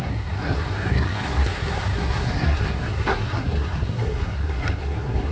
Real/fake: fake